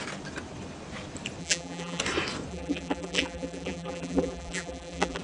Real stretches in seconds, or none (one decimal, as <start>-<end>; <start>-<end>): 0.0-1.4; 2.0-2.5